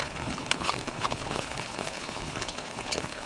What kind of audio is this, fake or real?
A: fake